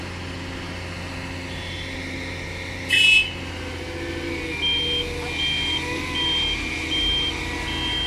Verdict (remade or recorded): recorded